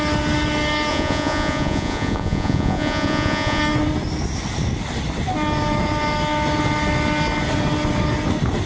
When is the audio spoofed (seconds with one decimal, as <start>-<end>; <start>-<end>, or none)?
0.9-3.6